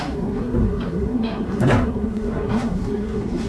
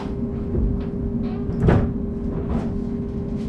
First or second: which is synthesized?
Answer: first